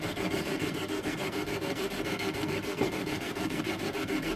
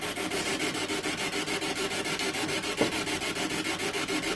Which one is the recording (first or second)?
second